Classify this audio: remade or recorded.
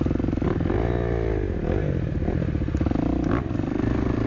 recorded